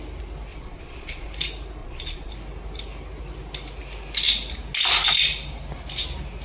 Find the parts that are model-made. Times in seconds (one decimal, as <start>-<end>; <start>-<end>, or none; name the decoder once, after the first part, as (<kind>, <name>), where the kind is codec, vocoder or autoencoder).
0.5-1.3 (vocoder, Vocos); 1.8-2.3